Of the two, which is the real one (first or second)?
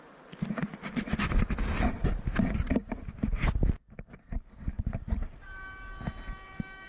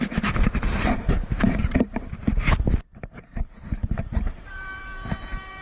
first